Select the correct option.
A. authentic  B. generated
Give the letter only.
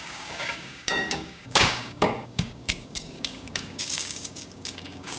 B